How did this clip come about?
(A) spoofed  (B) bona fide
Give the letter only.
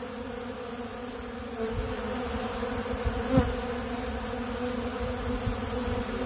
B